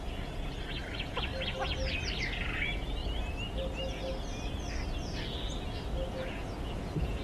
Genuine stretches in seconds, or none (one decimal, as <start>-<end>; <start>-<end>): 1.3-2.2; 3.0-6.1